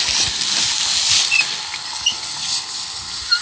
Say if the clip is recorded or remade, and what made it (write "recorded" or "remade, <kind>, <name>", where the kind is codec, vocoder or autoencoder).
recorded